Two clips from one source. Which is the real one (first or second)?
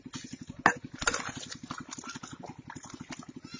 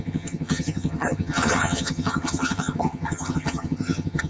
first